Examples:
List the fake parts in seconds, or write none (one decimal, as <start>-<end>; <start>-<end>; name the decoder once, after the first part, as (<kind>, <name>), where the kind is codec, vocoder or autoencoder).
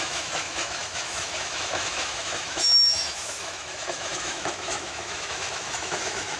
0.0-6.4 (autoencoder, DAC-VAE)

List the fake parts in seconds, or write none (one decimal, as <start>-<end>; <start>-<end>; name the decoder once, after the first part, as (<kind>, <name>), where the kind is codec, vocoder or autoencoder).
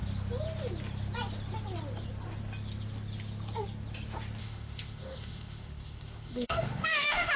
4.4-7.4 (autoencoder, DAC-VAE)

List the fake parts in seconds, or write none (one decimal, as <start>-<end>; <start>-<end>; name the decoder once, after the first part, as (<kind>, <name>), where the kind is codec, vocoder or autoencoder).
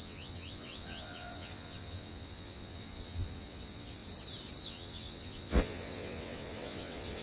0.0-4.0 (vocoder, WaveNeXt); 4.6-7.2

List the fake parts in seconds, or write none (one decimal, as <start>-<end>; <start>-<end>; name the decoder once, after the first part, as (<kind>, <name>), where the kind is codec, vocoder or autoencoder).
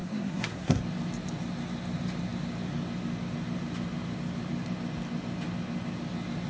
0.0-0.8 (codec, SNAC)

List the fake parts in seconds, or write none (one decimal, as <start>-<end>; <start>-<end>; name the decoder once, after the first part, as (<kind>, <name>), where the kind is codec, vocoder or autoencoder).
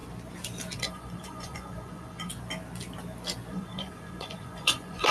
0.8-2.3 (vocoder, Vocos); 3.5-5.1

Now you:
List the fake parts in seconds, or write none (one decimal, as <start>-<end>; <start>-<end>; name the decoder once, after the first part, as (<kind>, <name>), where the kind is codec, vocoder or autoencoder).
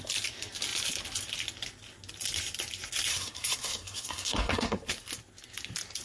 3.1-4.9 (codec, SNAC)